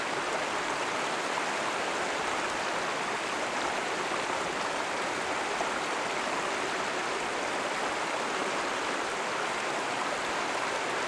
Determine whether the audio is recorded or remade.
recorded